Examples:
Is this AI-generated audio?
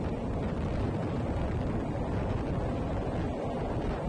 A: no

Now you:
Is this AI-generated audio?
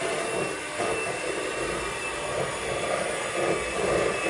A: no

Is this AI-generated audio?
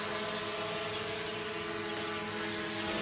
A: no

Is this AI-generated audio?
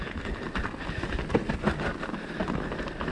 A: no